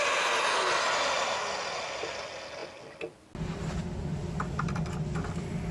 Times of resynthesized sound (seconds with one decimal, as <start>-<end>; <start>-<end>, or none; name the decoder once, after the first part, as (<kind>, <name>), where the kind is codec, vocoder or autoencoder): none